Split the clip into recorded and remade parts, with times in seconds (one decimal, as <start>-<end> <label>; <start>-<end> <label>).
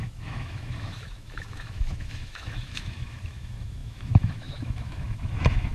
0.0-5.7 remade